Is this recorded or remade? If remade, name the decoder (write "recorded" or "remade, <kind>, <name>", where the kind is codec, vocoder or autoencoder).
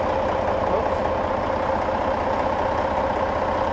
recorded